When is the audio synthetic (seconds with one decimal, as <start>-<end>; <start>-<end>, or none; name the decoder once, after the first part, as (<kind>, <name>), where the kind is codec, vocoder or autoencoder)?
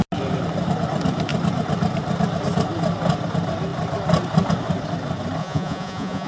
5.4-6.3 (vocoder, Vocos)